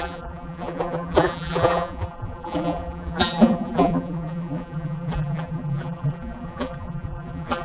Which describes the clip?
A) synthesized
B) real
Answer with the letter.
A